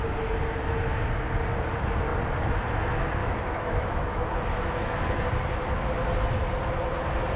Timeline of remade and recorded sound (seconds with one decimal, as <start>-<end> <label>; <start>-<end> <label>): 0.0-3.2 recorded; 3.2-5.2 remade; 5.2-7.4 recorded